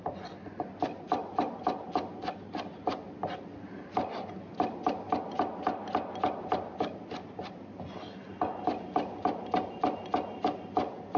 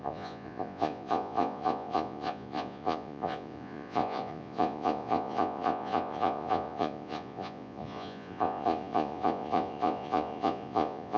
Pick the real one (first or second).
first